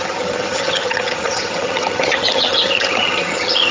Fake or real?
fake